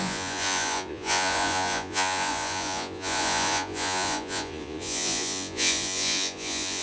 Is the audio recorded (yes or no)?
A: no